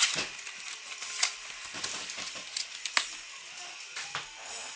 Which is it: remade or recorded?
recorded